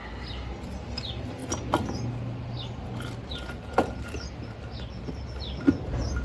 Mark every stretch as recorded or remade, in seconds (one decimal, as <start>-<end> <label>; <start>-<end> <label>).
0.0-6.2 recorded